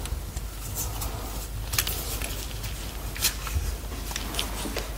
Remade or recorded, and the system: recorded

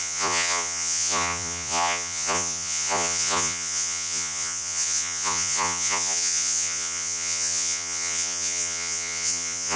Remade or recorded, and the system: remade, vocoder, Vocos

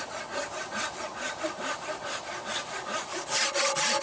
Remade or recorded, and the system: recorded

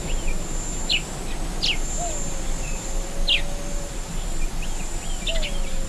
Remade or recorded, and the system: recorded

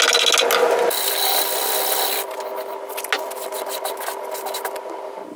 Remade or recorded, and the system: recorded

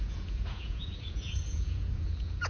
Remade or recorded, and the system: remade, vocoder, Vocos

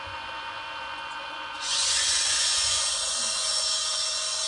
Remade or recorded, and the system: remade, vocoder, Vocos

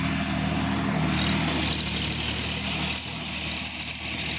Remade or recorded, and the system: recorded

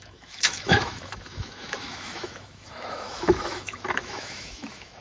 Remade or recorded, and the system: remade, autoencoder, DAC-VAE